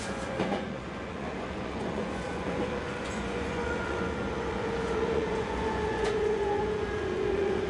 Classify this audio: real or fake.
fake